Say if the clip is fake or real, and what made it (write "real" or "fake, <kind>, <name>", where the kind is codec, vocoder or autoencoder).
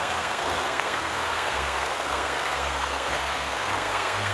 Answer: fake, codec, SNAC